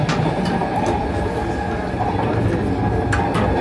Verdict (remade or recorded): recorded